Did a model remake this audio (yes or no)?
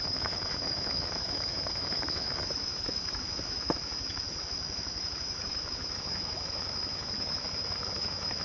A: yes